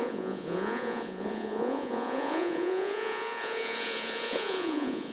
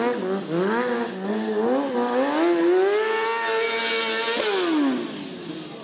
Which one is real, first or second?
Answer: second